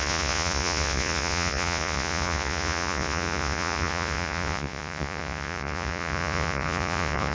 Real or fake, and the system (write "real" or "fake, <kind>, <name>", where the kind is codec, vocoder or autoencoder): fake, vocoder, Vocos